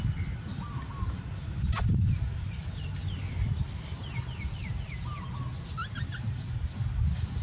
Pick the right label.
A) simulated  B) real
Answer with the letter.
B